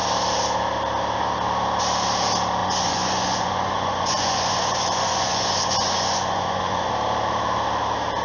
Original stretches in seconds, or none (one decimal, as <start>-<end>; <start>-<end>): 0.0-2.6; 6.9-8.2